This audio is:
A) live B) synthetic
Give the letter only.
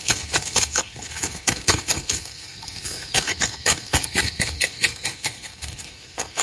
B